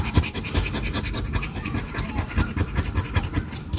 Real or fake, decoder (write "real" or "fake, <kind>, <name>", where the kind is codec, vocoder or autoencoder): real